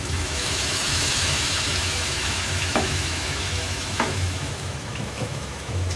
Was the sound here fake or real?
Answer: fake